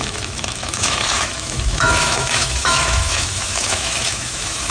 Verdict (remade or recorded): remade